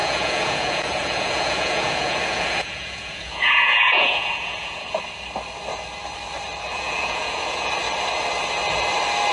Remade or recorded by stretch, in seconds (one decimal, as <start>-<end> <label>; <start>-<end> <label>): 0.0-5.0 remade; 5.0-6.7 recorded; 6.7-7.7 remade; 7.7-9.3 recorded